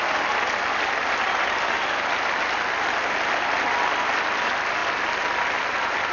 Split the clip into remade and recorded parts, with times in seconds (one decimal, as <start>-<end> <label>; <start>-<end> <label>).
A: 0.0-6.1 recorded